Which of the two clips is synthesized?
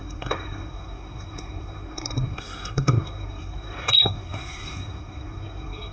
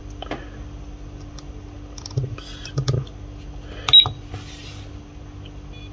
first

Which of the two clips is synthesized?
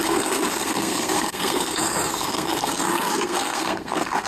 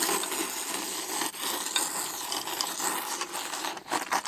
first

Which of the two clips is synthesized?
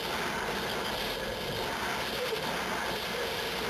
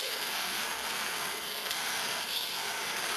second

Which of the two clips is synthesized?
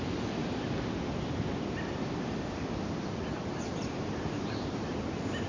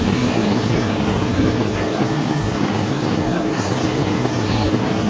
second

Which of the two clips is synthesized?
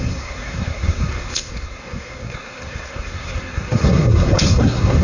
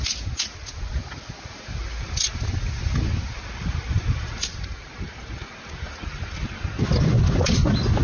first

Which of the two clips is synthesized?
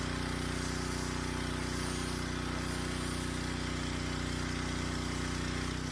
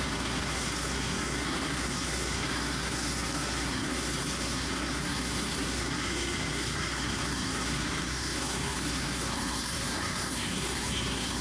second